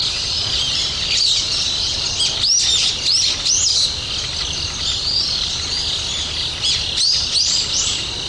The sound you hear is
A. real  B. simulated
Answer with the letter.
A